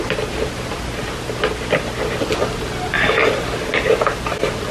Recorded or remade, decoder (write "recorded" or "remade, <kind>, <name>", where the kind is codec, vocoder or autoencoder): recorded